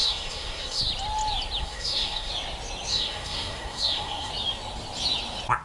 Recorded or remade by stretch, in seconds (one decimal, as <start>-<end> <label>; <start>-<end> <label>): 0.0-0.8 remade; 0.8-1.6 recorded; 1.6-2.3 remade; 2.3-2.9 recorded; 2.9-4.3 remade; 4.3-5.6 recorded